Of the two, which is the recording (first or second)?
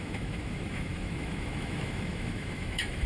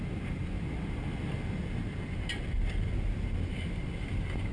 second